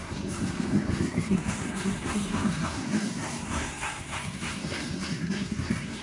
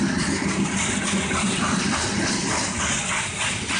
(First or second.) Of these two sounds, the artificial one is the first